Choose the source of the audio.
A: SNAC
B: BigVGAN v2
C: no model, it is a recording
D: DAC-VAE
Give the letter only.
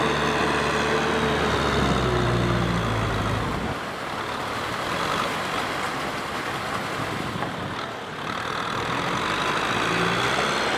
C